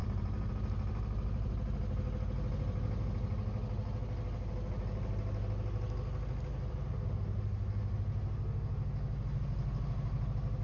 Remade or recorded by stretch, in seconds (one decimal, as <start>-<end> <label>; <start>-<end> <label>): 0.0-10.6 recorded